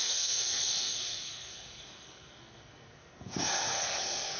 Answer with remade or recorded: remade